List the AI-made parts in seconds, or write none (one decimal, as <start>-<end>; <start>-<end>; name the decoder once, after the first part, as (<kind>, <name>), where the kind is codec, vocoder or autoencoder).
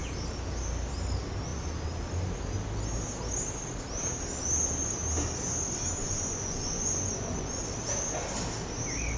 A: 6.0-7.6 (vocoder, Vocos)